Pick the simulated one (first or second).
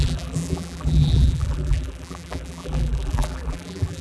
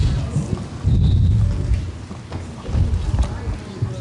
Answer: first